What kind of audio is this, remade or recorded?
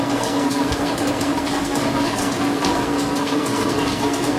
remade